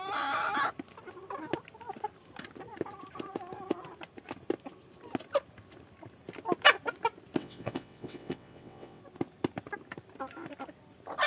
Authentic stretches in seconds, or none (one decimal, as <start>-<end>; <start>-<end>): 0.0-7.4; 9.0-11.3